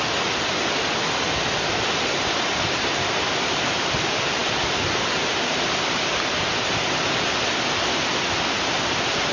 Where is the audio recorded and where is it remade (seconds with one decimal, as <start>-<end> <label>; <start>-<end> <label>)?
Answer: 0.0-9.3 recorded